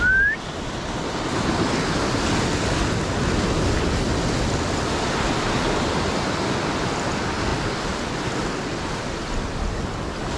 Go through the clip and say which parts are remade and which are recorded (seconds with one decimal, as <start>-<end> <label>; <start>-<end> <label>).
0.0-10.4 recorded